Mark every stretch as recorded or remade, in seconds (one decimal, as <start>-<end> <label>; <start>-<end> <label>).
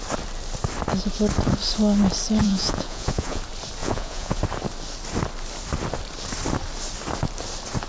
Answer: 0.0-2.4 recorded; 2.4-3.4 remade; 3.4-3.8 recorded; 3.8-4.4 remade; 4.4-7.9 recorded